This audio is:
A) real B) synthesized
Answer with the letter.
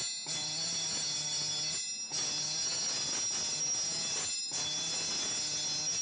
A